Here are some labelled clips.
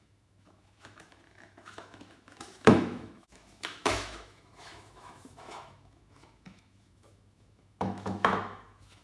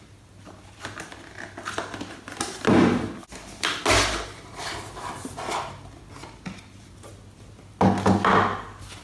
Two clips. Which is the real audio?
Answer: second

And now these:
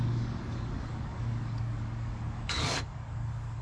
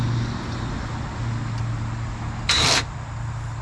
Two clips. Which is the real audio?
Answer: second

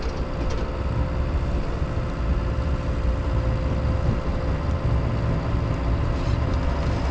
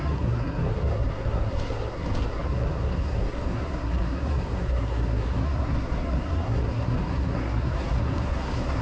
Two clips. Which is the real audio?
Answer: first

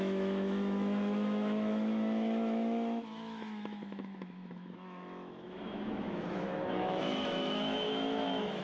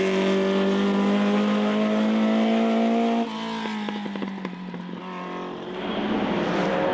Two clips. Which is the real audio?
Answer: second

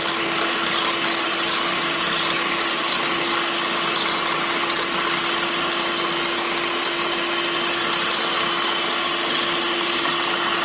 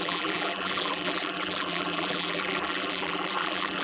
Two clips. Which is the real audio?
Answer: first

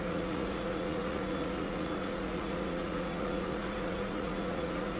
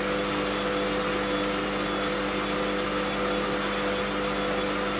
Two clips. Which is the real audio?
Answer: second